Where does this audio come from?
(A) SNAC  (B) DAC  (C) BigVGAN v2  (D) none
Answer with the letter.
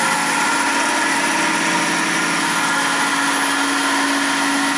D